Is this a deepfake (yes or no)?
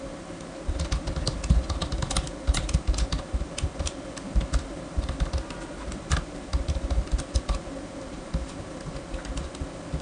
no